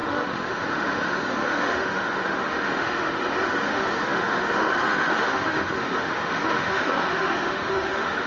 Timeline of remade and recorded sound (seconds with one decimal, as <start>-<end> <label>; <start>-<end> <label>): 0.0-8.3 remade

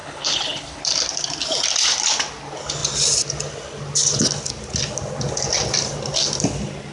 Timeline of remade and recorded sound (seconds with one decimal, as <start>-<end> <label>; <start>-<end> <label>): 0.0-0.8 remade; 0.8-6.9 recorded